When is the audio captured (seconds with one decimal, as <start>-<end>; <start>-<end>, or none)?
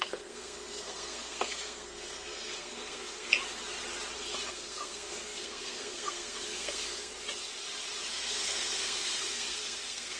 3.3-4.5; 7.1-8.1